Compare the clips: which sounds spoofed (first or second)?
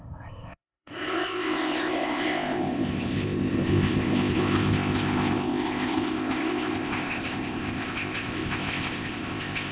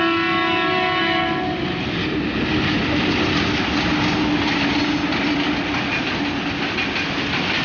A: first